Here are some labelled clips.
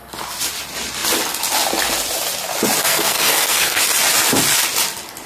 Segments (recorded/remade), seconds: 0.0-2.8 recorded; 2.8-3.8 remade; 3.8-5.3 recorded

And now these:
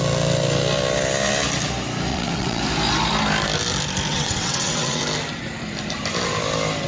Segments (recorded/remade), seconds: 0.0-2.1 recorded; 2.1-2.6 remade; 2.6-4.1 recorded; 4.1-5.0 remade; 5.0-6.9 recorded

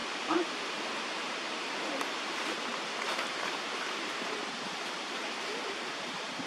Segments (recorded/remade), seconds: 0.0-0.9 recorded; 0.9-2.7 remade; 2.7-3.3 recorded; 3.3-6.5 remade

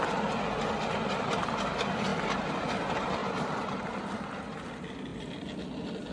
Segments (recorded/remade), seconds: 0.0-3.2 recorded; 3.2-4.6 remade; 4.6-6.1 recorded

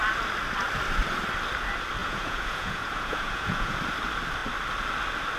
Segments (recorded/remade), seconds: 0.0-2.0 recorded; 2.0-3.8 remade; 3.8-5.4 recorded